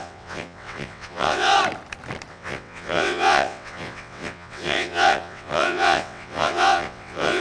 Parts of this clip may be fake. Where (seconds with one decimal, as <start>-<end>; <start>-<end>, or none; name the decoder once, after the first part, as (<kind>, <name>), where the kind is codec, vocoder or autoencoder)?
0.0-1.5 (vocoder, WaveNeXt); 2.3-7.4